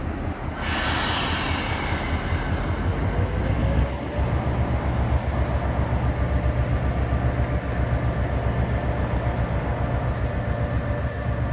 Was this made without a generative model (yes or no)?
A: yes